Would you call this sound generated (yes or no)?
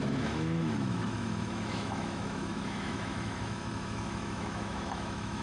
yes